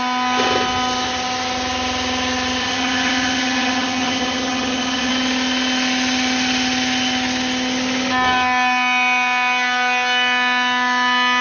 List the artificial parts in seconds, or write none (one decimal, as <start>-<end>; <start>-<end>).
2.6-5.1